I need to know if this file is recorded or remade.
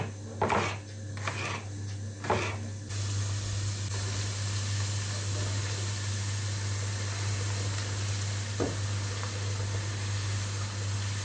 recorded